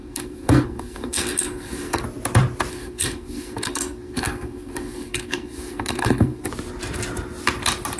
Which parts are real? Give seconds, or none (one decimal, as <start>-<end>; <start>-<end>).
2.0-2.7; 6.5-8.0